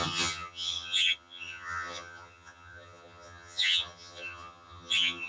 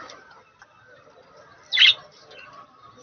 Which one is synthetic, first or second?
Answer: first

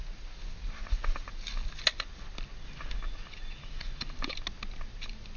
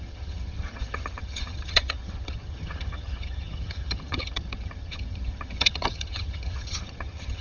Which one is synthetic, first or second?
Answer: second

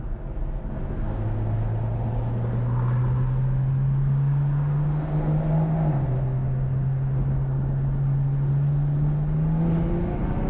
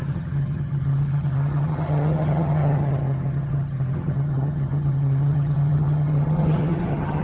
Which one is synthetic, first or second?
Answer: second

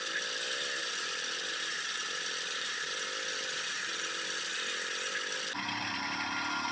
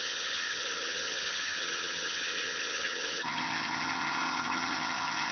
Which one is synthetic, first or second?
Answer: second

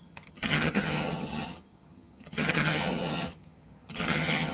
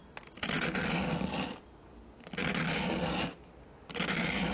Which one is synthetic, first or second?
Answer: first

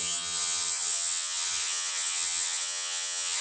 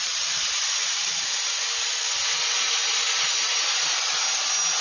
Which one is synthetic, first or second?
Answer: first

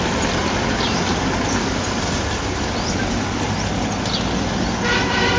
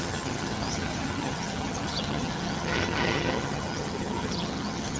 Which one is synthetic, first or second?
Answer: second